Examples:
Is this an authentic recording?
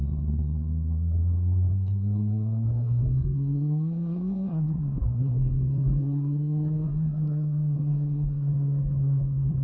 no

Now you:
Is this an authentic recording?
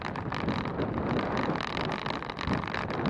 yes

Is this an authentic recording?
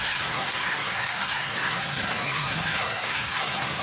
no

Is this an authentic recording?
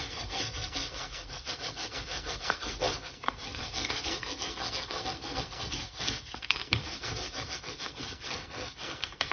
no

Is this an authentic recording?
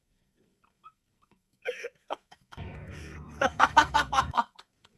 no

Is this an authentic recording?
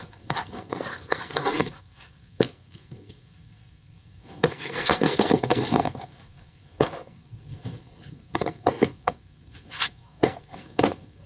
no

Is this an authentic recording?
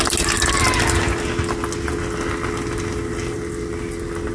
yes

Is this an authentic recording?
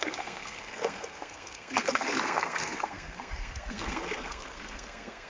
no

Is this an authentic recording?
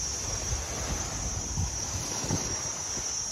yes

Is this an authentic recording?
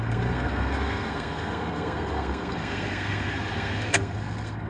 no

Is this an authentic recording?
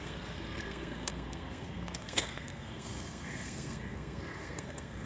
no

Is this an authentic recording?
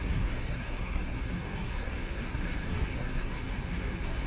no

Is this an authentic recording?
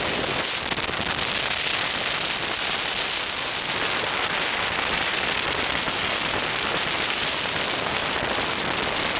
yes